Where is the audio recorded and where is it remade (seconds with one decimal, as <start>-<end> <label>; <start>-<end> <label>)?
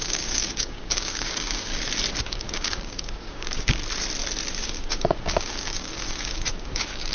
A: 0.0-1.7 remade; 1.7-2.2 recorded; 2.2-3.8 remade; 3.8-4.5 recorded; 4.5-7.1 remade